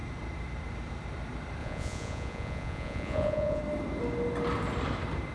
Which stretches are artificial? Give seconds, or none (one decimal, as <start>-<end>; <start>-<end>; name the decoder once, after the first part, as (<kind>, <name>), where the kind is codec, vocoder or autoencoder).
1.6-3.6 (vocoder, Vocos)

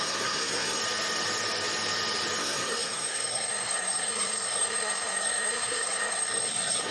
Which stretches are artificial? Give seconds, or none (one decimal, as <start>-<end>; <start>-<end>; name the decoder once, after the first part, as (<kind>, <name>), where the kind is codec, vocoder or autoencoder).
0.0-0.8 (codec, SNAC); 2.4-6.9

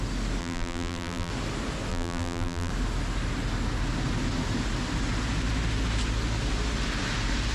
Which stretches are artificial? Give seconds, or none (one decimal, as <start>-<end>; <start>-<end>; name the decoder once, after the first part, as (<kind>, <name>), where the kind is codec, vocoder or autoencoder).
0.4-1.3 (vocoder, BigVGAN v2); 1.9-2.7

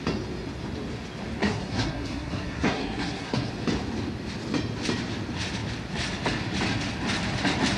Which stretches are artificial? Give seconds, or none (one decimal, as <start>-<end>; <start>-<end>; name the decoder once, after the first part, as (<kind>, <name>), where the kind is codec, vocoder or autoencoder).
1.4-3.5 (codec, SNAC)

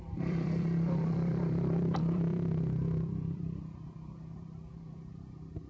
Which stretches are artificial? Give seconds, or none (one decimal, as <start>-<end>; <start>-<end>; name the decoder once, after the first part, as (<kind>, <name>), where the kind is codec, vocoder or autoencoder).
0.0-5.7 (vocoder, BigVGAN v2)

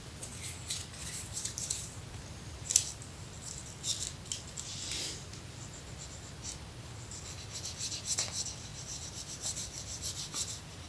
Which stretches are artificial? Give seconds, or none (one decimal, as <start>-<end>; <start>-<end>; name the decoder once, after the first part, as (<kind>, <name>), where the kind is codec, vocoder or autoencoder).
1.0-2.7 (vocoder, BigVGAN v2); 8.7-10.0